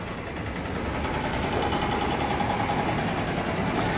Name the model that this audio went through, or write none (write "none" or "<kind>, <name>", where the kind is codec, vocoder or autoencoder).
none